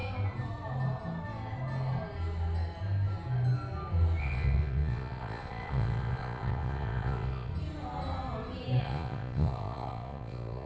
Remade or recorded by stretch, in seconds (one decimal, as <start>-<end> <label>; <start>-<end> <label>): 0.0-4.2 recorded; 4.2-7.5 remade; 7.5-8.8 recorded; 8.8-10.7 remade